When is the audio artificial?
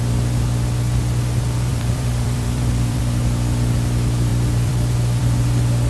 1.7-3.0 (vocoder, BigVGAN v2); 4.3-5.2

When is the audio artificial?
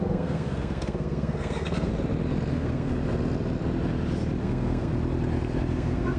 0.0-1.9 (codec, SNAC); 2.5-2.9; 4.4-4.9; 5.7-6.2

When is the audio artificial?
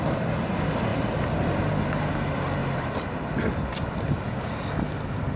0.0-2.6 (vocoder, BigVGAN v2); 3.9-5.4